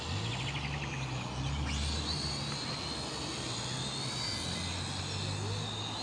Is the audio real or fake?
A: real